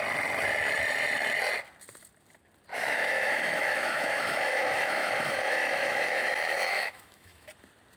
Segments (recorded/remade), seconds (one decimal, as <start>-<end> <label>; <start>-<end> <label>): 0.0-2.7 recorded; 2.7-7.5 remade; 7.5-8.0 recorded